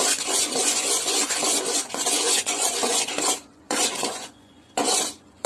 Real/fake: fake